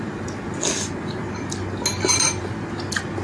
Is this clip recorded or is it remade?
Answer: recorded